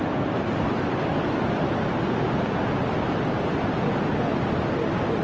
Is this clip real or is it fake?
real